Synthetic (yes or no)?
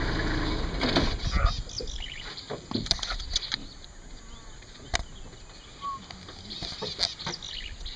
no